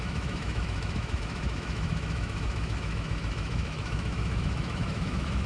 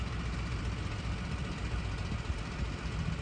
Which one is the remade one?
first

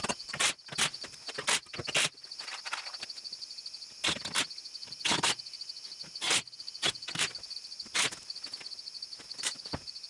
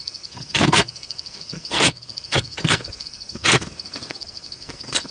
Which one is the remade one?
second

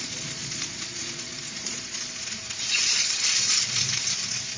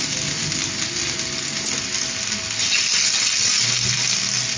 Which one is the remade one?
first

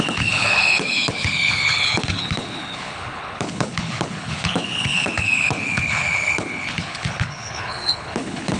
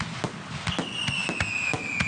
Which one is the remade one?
first